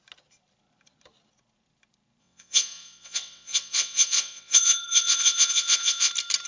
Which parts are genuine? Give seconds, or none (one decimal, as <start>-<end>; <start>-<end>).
0.0-2.2; 6.1-6.5